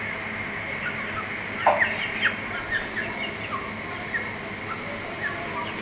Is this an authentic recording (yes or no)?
yes